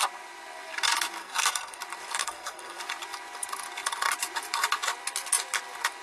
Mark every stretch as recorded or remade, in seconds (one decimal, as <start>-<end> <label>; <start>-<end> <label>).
0.0-1.2 recorded; 1.2-1.8 remade; 1.8-2.2 recorded; 2.2-2.8 remade; 2.8-6.0 recorded